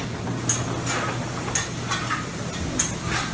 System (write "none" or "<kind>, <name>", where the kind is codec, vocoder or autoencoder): none